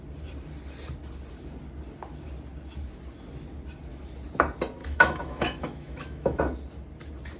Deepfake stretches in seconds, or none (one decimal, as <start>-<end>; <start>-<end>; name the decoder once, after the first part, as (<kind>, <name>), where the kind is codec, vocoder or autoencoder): 4.8-6.4 (autoencoder, DAC-VAE)